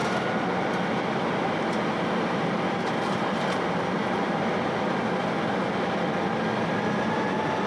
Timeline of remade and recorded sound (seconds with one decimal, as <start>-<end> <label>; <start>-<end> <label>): 0.0-7.7 recorded